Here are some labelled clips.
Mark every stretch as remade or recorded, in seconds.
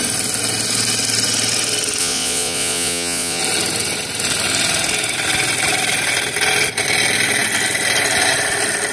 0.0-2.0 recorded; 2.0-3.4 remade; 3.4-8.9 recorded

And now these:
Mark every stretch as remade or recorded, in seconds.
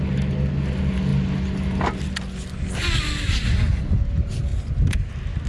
0.0-5.5 recorded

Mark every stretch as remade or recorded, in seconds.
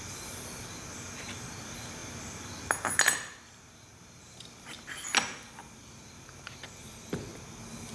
0.0-7.9 recorded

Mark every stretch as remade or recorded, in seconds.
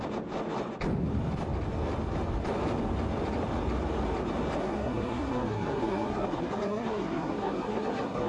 0.0-4.6 recorded; 4.6-8.3 remade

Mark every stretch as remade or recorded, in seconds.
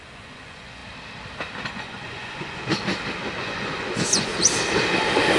0.0-0.8 remade; 0.8-1.7 recorded; 1.7-2.6 remade; 2.6-3.4 recorded; 3.4-4.3 remade; 4.3-5.4 recorded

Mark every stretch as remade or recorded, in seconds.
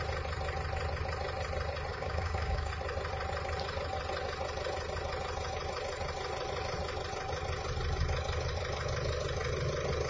0.0-1.9 recorded; 1.9-2.7 remade; 2.7-10.1 recorded